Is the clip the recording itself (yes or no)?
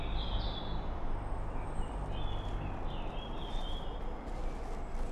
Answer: yes